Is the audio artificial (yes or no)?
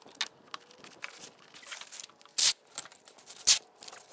no